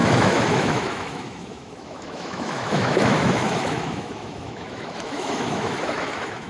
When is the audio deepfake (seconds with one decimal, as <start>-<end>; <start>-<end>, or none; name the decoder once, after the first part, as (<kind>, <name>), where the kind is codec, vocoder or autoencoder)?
0.0-6.5 (autoencoder, DAC-VAE)